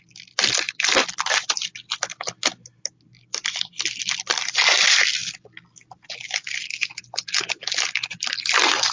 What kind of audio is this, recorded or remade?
recorded